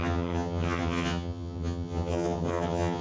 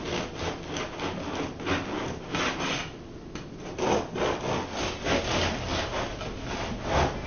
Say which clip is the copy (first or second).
first